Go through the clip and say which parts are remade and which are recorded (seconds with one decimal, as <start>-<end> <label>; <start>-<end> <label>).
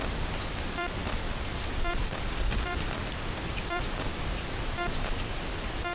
0.0-1.0 remade; 1.0-1.5 recorded; 1.5-5.9 remade